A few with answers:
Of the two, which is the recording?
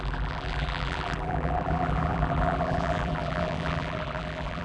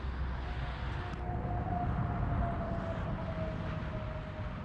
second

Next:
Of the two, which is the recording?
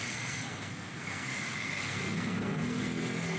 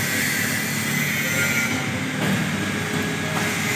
second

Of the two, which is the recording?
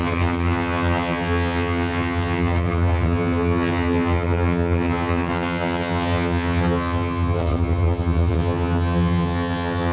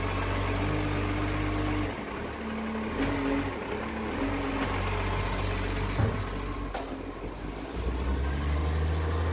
second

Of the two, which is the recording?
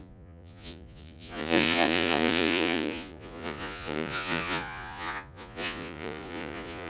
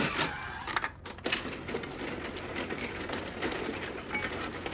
second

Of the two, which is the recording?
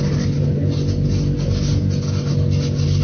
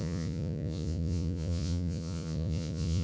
first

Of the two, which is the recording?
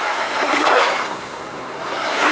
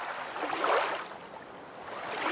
second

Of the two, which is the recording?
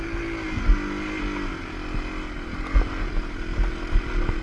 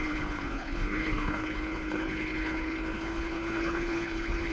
first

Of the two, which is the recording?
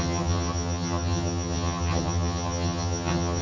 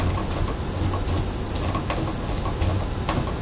second